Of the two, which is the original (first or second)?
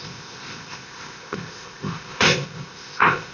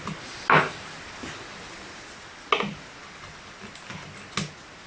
second